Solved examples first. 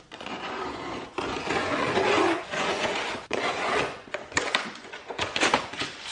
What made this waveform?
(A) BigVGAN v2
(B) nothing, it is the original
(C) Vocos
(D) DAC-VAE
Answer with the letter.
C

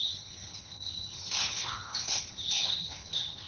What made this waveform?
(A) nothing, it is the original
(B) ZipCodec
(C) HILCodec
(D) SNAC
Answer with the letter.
C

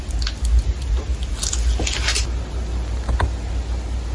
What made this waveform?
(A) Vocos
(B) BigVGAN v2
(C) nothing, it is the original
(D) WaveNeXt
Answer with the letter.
C